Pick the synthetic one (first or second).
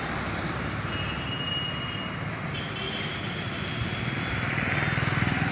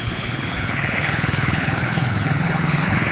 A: second